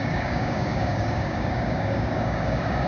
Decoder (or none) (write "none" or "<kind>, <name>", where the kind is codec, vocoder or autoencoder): codec, DAC